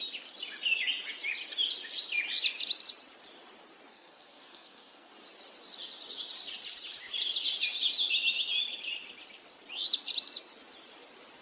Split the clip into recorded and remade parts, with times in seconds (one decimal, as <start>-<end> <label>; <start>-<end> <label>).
0.0-3.9 recorded; 3.9-5.1 remade; 5.1-11.4 recorded